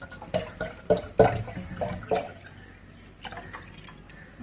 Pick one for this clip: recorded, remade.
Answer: recorded